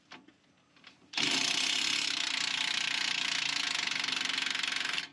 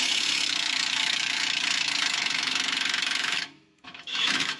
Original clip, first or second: first